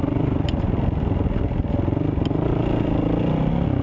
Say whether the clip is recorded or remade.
recorded